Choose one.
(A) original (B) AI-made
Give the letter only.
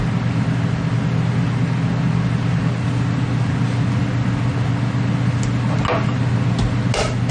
A